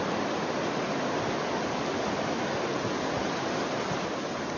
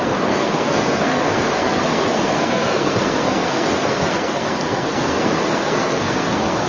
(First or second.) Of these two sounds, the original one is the first